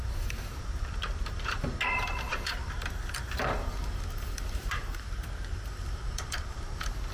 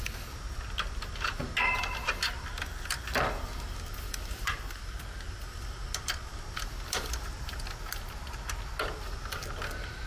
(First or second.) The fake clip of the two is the first